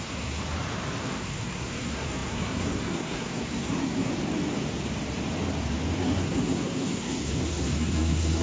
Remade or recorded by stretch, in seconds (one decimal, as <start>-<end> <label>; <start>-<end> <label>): 0.0-0.4 remade; 0.4-1.0 recorded; 1.0-4.1 remade; 4.1-6.0 recorded; 6.0-8.4 remade